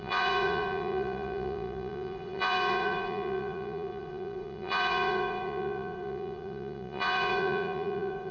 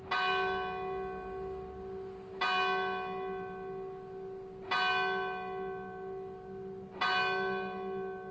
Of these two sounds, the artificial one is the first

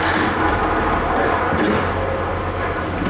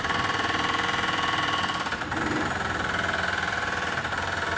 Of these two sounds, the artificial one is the second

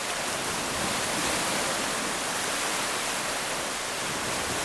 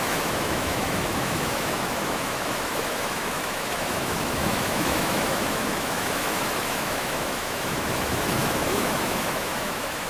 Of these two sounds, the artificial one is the second